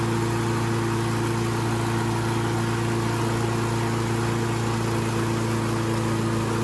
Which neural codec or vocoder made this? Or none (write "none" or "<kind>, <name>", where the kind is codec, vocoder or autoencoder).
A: none